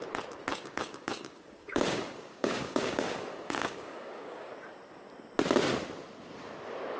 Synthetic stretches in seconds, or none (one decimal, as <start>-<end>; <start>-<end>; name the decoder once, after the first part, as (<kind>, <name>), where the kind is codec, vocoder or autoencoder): 0.5-4.5 (codec, DAC)